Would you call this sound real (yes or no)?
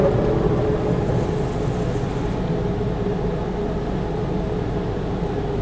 yes